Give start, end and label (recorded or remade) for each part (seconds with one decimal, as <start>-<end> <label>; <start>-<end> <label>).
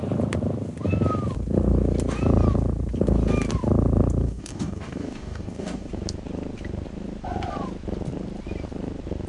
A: 0.0-4.2 recorded; 4.2-5.9 remade; 5.9-9.3 recorded